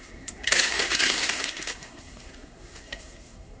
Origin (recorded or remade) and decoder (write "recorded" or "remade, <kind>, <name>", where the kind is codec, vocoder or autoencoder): remade, codec, SNAC